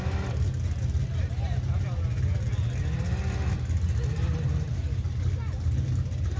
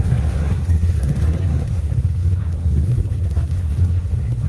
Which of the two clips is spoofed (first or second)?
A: second